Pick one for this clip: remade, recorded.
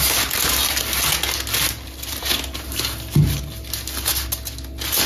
recorded